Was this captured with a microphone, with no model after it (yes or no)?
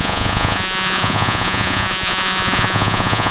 no